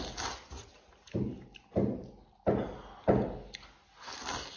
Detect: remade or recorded recorded